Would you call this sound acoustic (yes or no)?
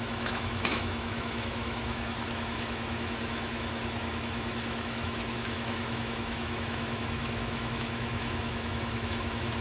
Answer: no